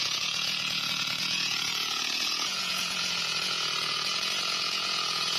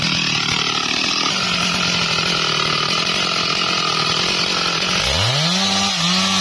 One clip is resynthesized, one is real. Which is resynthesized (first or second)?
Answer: first